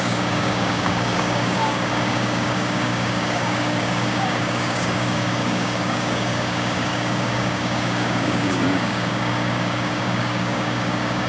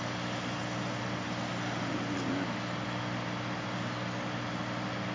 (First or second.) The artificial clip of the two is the first